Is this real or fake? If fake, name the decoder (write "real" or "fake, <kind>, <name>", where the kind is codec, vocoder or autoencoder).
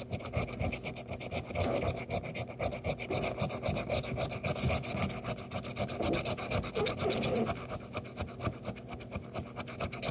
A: real